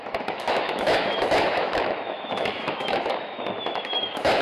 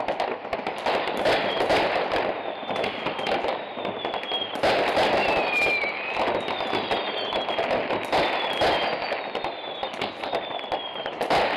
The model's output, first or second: first